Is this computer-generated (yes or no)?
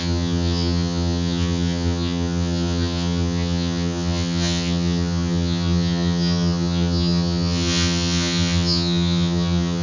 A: yes